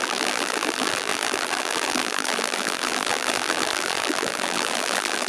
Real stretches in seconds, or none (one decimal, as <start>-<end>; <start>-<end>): none